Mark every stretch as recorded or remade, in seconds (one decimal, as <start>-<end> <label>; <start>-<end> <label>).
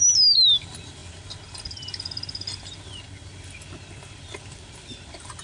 0.0-5.4 recorded